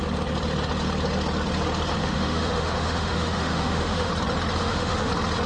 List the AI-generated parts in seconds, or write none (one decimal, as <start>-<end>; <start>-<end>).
2.0-4.1; 4.6-5.1